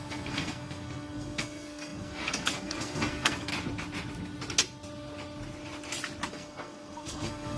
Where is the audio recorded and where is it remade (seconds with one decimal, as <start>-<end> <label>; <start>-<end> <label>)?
0.0-3.5 remade; 3.5-6.3 recorded; 6.3-7.6 remade